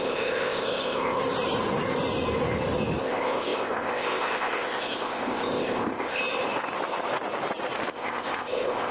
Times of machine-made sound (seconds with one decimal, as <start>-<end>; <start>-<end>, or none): 0.0-1.2; 3.0-6.2; 7.9-8.9